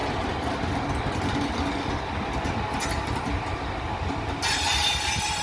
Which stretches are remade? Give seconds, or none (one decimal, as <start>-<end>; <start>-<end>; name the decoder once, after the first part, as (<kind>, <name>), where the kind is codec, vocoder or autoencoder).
none